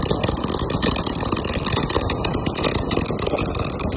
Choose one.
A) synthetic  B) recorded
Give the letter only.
B